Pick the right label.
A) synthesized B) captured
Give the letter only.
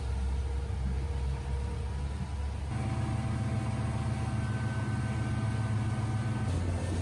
B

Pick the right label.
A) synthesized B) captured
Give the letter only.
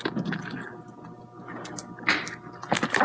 B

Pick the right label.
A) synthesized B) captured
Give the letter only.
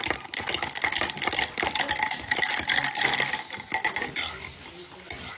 B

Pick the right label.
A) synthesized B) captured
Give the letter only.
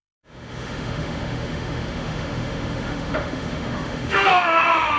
A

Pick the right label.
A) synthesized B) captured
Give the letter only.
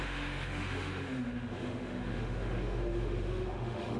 A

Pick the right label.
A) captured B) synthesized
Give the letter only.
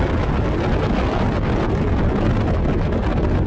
A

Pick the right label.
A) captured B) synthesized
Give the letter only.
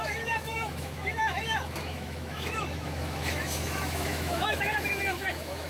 B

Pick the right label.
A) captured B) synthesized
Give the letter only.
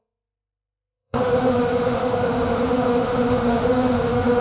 B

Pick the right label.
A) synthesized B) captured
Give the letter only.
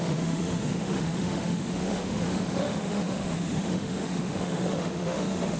A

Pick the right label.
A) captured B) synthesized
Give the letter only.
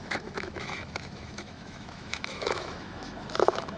B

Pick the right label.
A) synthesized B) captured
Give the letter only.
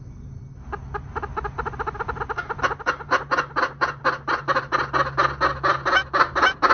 B